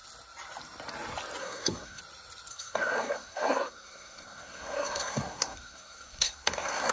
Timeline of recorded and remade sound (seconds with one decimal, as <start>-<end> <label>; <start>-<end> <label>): 0.0-1.4 recorded; 1.4-2.0 remade; 2.0-2.5 recorded; 2.5-6.9 remade